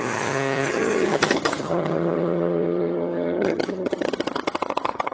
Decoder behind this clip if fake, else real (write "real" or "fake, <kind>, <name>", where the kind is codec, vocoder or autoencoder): fake, vocoder, HiFi-GAN